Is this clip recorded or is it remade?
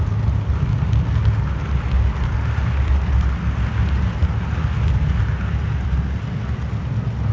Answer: recorded